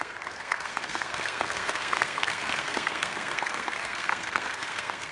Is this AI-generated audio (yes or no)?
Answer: yes